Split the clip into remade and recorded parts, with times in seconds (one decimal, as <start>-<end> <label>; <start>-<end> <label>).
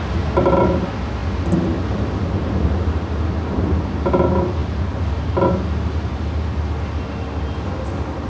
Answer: 0.0-8.3 recorded